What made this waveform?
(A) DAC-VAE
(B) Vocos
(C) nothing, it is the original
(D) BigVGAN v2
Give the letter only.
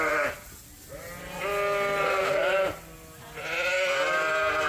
C